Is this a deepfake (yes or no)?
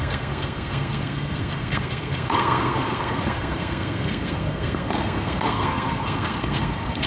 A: yes